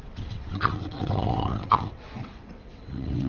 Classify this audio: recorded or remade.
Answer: remade